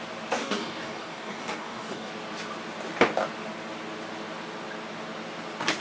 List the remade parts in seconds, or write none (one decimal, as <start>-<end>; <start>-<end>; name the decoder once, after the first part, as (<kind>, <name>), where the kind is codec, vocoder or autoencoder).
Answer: 0.4-2.1 (codec, DAC)